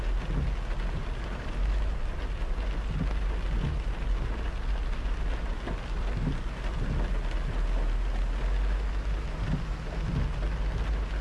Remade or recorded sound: recorded